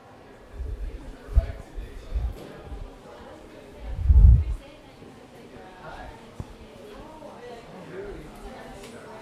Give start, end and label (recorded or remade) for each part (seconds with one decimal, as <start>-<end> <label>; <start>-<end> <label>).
0.0-4.3 remade; 4.3-9.2 recorded